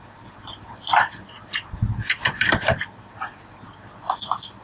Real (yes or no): yes